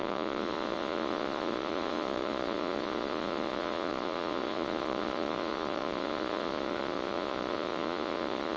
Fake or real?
fake